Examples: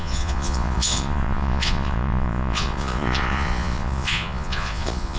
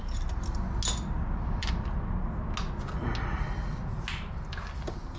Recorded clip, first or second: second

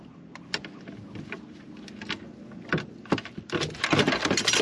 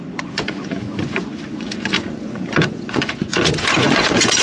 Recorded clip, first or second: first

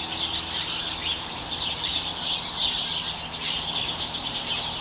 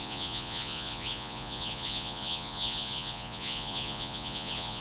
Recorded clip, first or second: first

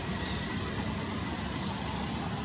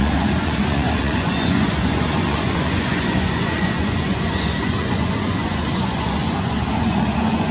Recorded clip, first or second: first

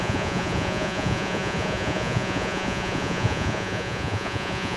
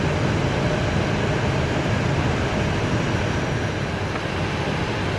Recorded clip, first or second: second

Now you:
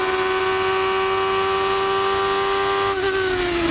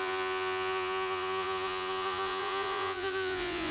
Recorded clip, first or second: first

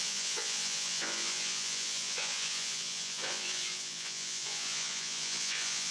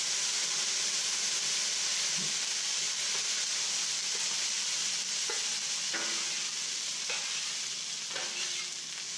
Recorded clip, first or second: second